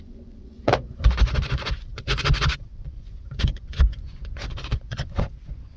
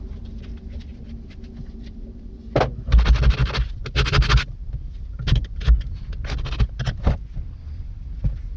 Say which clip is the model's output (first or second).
first